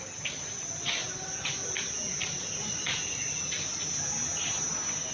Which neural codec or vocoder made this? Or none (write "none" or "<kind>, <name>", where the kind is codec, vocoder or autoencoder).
none